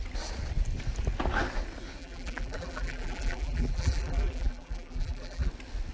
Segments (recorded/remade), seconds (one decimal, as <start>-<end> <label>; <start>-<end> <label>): 0.0-2.0 recorded; 2.0-5.5 remade; 5.5-5.9 recorded